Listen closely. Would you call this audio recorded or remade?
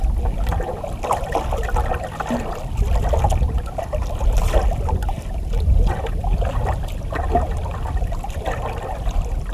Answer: recorded